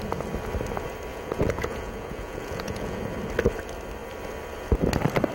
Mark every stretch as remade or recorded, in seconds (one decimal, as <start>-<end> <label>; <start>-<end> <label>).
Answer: 0.0-1.1 recorded; 1.1-3.0 remade; 3.0-5.3 recorded